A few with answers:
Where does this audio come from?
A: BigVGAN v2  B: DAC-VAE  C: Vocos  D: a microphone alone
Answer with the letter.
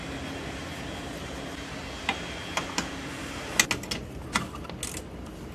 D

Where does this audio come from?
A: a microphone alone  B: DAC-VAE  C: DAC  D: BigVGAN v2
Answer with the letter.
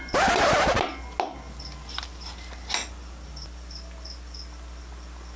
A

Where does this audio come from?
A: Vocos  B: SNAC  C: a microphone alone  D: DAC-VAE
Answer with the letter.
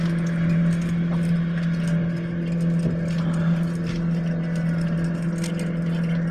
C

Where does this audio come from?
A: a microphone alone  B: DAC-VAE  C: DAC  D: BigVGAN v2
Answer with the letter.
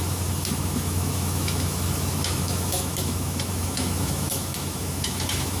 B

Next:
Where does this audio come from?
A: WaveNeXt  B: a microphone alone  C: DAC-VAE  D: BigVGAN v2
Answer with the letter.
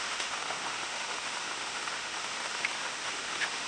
C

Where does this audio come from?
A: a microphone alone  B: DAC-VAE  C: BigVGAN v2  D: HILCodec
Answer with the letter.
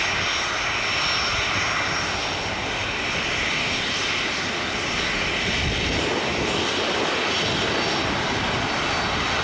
A